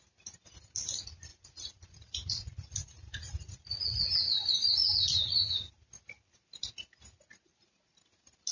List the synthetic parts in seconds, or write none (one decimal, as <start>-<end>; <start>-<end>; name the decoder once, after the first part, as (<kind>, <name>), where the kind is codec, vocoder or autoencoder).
1.3-5.7 (vocoder, Vocos)